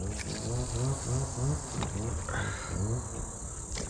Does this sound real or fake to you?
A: real